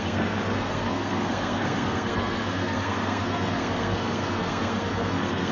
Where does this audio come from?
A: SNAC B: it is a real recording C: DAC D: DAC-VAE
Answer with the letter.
A